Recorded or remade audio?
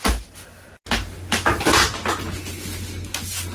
recorded